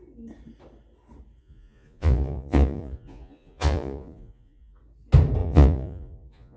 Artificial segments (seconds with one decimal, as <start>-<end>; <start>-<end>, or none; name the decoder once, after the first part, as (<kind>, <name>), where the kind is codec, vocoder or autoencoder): 1.4-4.8 (vocoder, Vocos); 5.4-6.6